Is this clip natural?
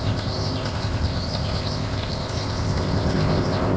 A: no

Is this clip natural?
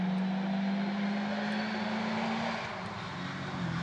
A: yes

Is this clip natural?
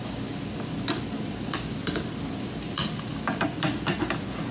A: yes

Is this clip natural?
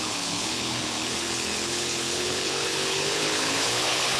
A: no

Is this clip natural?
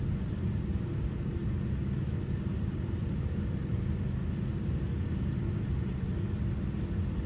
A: yes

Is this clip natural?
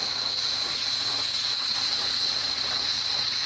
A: no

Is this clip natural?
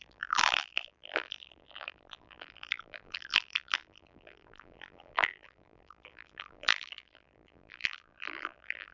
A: no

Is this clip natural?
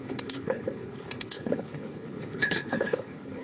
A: no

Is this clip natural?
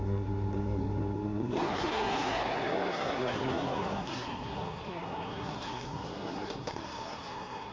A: no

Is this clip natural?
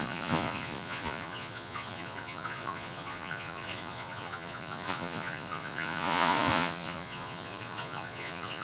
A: no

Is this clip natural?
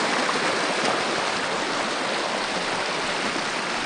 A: yes